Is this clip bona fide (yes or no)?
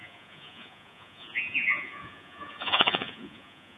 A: no